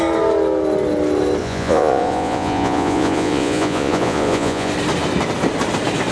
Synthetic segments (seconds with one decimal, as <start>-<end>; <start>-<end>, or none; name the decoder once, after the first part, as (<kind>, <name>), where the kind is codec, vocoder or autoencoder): 1.4-4.7 (vocoder, Vocos)